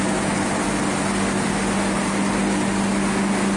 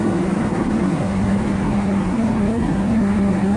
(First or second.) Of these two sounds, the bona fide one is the first